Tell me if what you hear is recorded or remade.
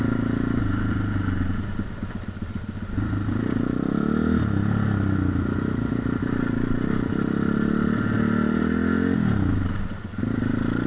recorded